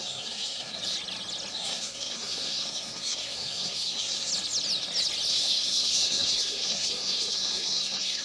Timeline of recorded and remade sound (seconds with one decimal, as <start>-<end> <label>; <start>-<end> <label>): 0.0-0.8 remade; 0.8-1.5 recorded; 1.5-4.3 remade; 4.3-5.3 recorded; 5.3-8.2 remade